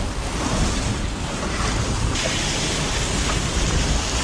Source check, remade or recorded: remade